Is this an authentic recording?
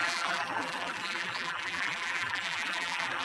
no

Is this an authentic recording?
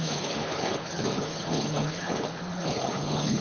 no